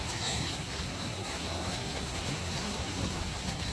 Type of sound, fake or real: fake